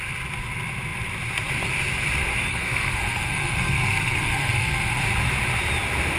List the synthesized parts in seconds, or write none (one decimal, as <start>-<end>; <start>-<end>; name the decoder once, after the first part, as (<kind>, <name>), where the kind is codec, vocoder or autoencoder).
2.5-5.0 (codec, SNAC)

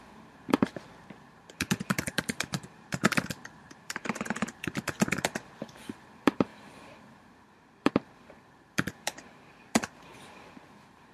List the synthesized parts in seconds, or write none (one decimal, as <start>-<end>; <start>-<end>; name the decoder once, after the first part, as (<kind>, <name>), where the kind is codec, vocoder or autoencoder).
0.0-10.1 (vocoder, BigVGAN v2); 10.7-11.1

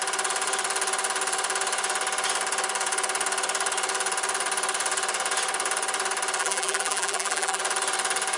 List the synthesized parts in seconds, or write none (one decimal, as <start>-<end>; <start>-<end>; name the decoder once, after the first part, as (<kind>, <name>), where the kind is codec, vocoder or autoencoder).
6.4-7.6 (vocoder, BigVGAN v2)

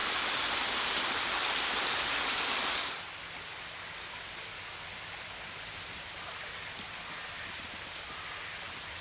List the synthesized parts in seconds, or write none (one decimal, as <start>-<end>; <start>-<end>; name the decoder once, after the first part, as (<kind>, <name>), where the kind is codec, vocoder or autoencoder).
none

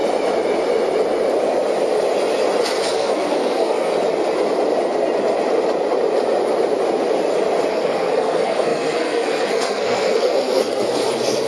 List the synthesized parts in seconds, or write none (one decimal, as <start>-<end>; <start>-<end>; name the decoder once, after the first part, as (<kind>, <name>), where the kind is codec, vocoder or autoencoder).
2.8-3.9 (codec, SNAC); 7.7-11.5

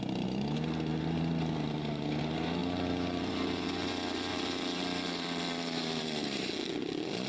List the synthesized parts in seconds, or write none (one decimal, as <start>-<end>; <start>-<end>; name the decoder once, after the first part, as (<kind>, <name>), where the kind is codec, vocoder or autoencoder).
0.9-2.2 (vocoder, BigVGAN v2); 2.6-3.9; 4.3-6.5